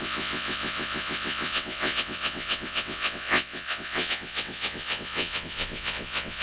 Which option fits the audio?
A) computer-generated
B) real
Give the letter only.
A